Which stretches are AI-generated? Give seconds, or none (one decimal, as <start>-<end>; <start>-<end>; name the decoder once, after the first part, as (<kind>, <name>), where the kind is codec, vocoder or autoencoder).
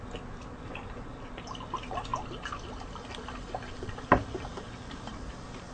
none